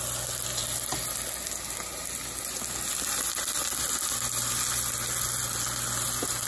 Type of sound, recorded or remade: recorded